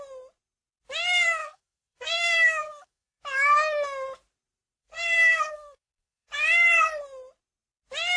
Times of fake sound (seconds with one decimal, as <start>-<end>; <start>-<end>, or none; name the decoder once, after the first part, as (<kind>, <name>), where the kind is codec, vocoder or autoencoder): 1.4-3.2 (codec, SNAC); 4.8-6.3